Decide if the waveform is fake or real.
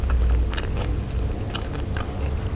real